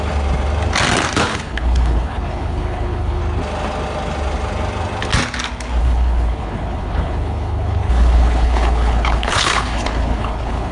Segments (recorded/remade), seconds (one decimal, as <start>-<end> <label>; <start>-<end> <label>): 0.0-1.3 recorded; 1.3-3.2 remade; 3.2-5.8 recorded; 5.8-10.7 remade